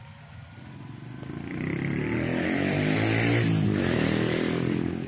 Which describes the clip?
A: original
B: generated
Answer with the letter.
A